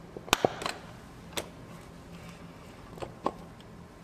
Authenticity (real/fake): real